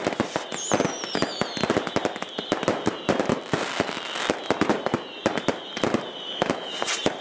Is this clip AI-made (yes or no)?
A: no